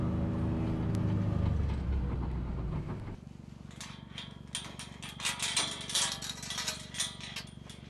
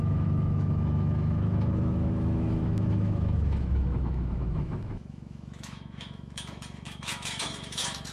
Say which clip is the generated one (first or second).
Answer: second